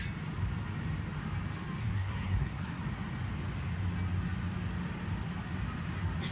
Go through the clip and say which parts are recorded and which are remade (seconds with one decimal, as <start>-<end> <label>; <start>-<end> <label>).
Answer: 0.0-1.8 recorded; 1.8-2.8 remade; 2.8-6.3 recorded